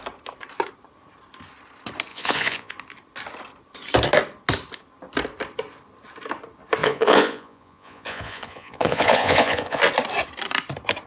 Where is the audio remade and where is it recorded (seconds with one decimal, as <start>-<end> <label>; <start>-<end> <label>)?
0.0-2.1 recorded; 2.1-2.7 remade; 2.7-6.8 recorded; 6.8-9.8 remade; 9.8-11.1 recorded